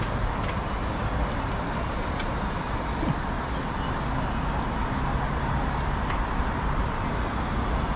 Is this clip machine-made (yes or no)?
no